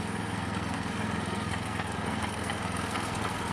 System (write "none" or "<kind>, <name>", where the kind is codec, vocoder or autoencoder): codec, SNAC